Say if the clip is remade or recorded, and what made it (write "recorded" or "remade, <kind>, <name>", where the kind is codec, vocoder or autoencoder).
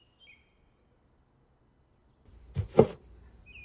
recorded